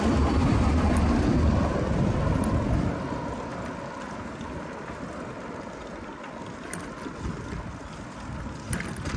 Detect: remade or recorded recorded